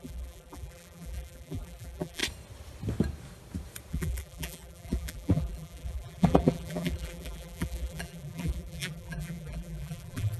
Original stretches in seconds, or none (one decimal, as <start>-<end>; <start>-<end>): 2.2-3.9